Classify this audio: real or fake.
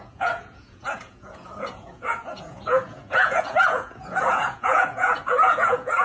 fake